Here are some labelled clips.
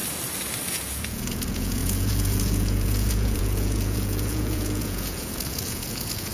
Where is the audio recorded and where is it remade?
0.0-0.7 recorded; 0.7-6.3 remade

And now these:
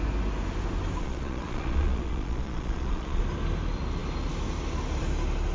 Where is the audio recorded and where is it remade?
0.0-1.0 recorded; 1.0-3.2 remade; 3.2-5.5 recorded